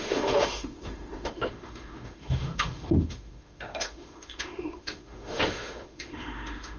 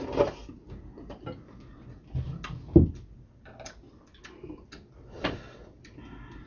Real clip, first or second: second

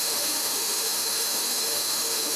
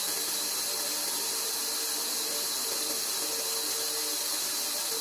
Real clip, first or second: second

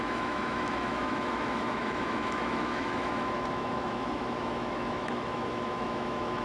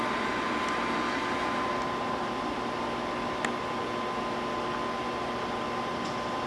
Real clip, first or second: second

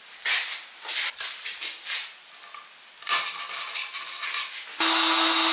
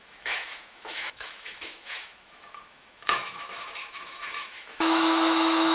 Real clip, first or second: first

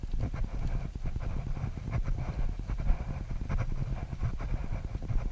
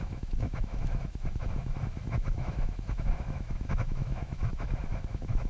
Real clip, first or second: first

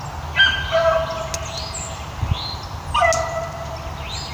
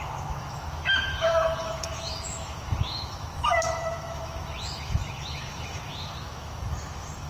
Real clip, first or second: first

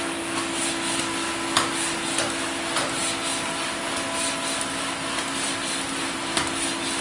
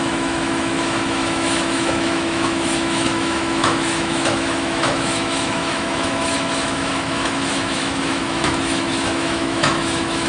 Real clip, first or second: first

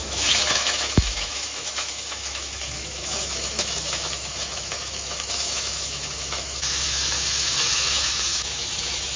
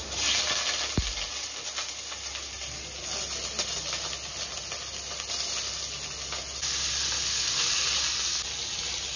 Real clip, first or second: second